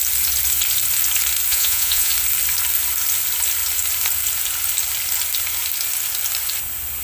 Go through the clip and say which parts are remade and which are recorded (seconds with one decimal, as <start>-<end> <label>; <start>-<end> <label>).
0.0-1.5 recorded; 1.5-2.1 remade; 2.1-7.0 recorded

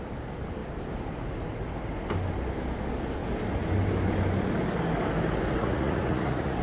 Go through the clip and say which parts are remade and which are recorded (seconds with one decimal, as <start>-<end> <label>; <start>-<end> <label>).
0.0-5.6 recorded; 5.6-6.6 remade

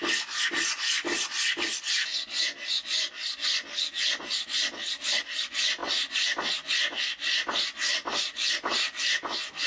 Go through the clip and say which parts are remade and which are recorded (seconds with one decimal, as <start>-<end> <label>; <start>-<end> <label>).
0.0-9.7 recorded